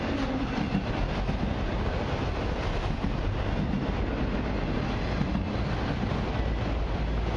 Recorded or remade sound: recorded